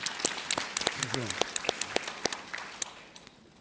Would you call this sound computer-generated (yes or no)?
no